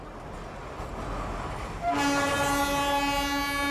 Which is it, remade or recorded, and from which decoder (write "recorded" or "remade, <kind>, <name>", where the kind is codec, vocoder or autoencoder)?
recorded